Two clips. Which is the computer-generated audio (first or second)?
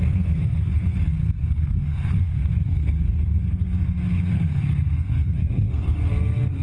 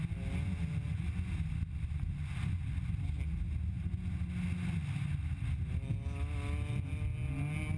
first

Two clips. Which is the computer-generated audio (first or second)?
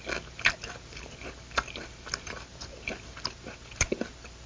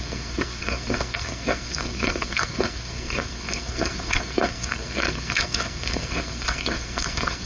second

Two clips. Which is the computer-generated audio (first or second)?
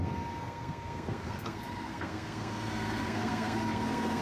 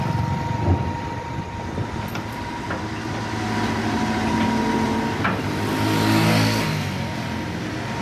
first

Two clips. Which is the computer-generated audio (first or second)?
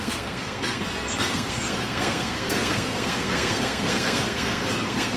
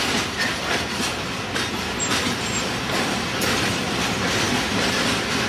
first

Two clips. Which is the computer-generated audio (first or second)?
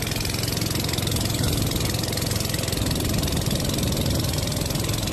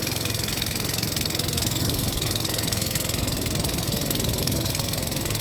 second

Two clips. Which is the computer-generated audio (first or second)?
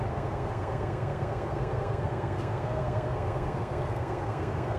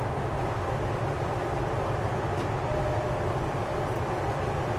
first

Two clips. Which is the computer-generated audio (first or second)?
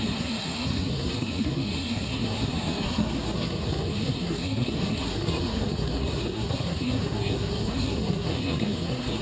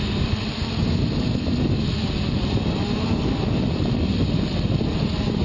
first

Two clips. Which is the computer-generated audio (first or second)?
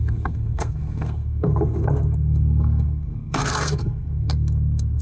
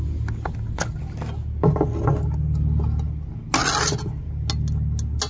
first